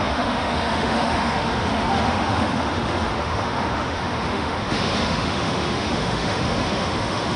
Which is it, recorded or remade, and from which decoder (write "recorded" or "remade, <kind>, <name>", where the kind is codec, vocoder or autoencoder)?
remade, autoencoder, DAC-VAE